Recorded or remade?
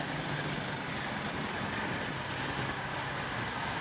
recorded